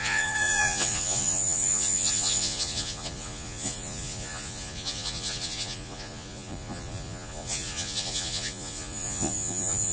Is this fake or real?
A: fake